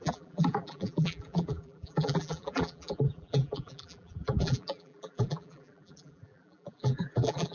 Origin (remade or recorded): remade